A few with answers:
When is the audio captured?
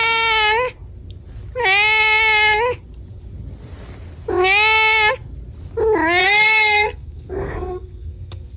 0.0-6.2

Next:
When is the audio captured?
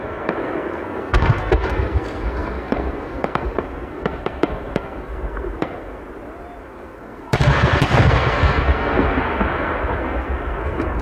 6.0-6.6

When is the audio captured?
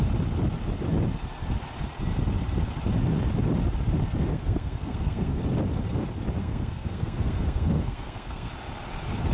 0.0-4.3; 5.4-6.4; 8.5-9.3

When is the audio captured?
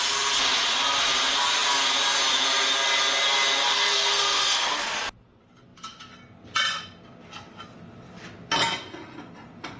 0.0-3.7; 4.7-9.8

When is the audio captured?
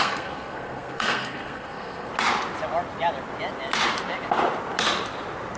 2.1-5.6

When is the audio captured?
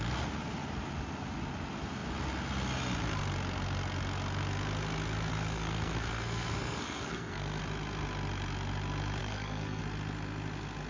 0.0-5.3; 7.6-9.2; 9.8-10.9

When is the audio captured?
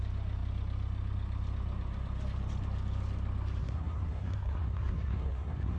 0.0-3.6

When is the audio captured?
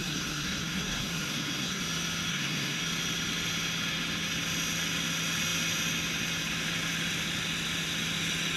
1.8-2.3; 2.8-8.6